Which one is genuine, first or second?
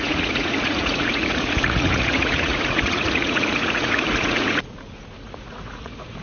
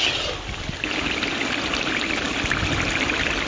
second